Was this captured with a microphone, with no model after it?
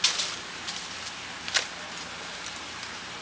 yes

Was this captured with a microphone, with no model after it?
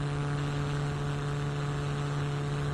yes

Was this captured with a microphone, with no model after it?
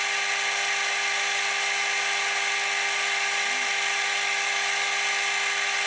yes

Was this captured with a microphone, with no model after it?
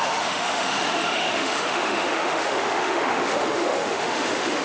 no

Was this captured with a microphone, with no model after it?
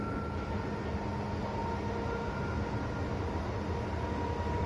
yes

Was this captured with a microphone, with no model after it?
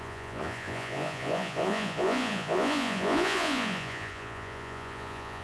no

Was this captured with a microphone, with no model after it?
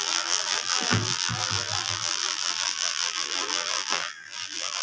no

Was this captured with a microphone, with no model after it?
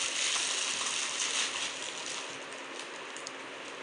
yes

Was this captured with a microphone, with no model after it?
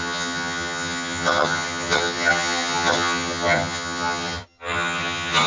no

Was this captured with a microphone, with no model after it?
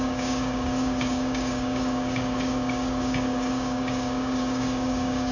no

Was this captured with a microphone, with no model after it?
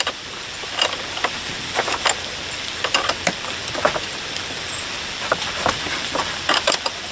yes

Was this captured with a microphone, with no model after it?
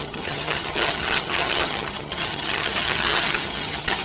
no